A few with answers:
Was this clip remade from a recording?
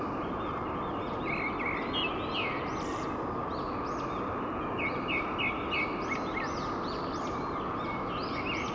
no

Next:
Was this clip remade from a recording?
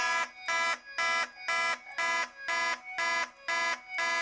no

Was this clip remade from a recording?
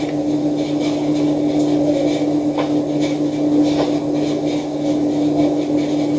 no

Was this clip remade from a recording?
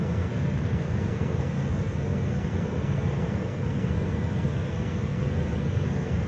yes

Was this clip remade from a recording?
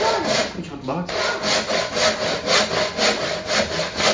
no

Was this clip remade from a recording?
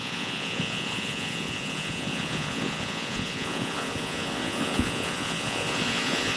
yes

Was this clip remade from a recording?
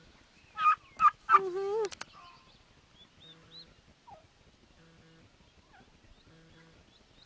no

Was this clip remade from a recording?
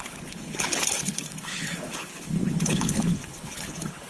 yes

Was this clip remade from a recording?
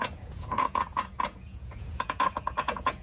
yes